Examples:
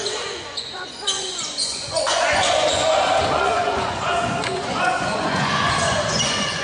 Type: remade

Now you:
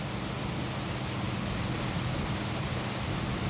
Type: recorded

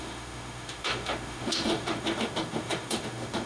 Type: remade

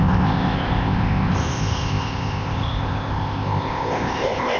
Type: remade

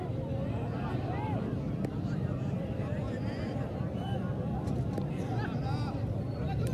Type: remade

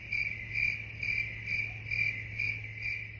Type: recorded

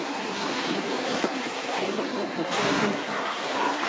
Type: remade